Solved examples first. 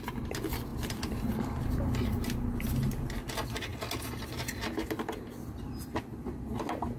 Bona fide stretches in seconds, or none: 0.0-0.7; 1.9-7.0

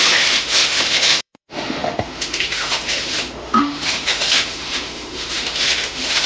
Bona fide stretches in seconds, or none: none

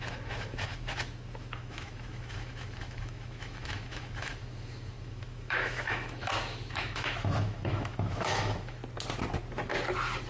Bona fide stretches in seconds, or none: 8.8-10.3

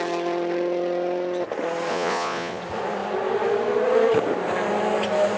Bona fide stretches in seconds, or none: 0.0-1.9; 2.6-5.4